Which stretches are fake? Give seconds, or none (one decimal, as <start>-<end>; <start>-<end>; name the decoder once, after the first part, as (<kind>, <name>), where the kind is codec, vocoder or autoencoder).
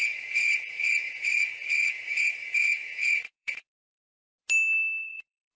0.0-4.0 (vocoder, Vocos); 5.0-5.6